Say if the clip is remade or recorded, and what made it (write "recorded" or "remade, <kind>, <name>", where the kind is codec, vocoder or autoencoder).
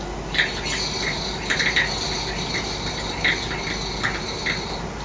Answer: recorded